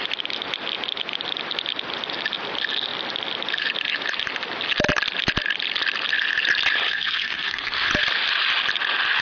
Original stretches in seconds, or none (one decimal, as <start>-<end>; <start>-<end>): 0.0-6.9; 7.9-9.2